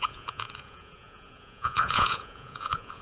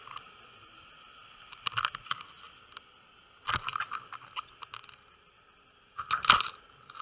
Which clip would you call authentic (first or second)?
second